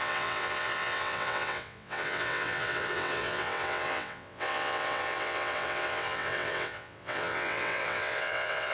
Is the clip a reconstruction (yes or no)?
yes